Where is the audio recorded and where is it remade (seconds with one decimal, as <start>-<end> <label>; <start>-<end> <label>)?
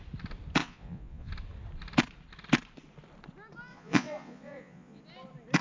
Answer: 0.0-0.6 recorded; 0.6-1.3 remade; 1.3-3.7 recorded; 3.7-5.0 remade; 5.0-5.6 recorded